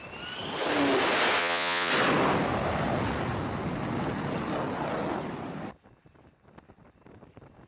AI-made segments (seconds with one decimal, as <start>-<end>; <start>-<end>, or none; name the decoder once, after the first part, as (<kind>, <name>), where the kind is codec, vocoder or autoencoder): 1.4-1.9 (vocoder, Vocos)